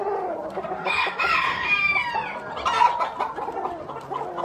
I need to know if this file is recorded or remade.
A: recorded